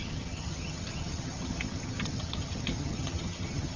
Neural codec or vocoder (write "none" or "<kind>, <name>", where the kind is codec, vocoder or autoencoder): vocoder, HiFi-GAN